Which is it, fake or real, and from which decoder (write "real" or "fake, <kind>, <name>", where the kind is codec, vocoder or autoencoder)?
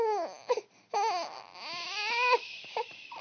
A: real